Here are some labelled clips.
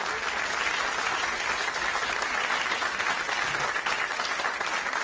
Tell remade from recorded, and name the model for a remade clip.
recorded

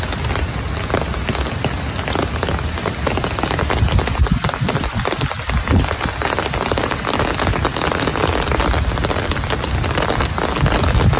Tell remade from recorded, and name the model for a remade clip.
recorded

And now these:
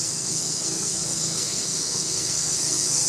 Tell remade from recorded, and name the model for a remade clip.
remade, codec, SNAC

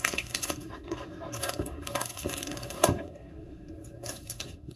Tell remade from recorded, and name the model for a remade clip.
remade, codec, SNAC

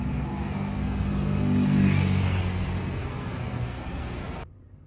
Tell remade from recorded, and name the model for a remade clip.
remade, codec, SNAC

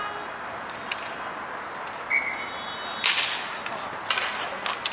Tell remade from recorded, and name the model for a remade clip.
recorded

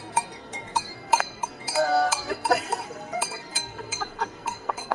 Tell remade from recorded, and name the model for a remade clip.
remade, codec, SNAC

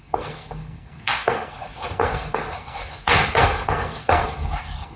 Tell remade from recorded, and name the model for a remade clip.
remade, codec, SNAC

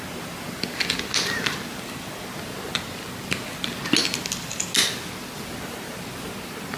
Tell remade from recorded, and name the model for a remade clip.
recorded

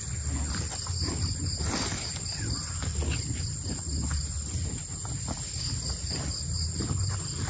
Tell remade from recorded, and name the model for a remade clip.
recorded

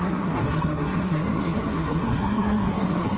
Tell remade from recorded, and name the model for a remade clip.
remade, codec, SNAC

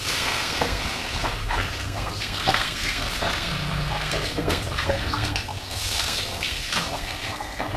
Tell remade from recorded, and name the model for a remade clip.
remade, codec, SNAC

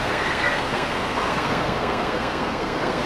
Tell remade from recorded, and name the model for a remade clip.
remade, codec, SNAC